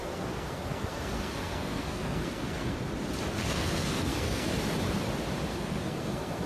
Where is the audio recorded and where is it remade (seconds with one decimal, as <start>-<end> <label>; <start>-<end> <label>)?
0.0-2.8 remade; 2.8-3.4 recorded; 3.4-4.5 remade; 4.5-5.5 recorded; 5.5-6.5 remade